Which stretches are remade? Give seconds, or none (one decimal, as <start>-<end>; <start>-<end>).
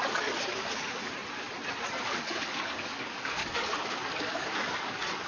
0.0-1.0; 1.9-5.3